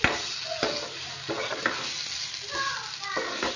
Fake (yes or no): no